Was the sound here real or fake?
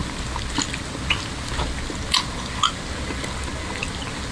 real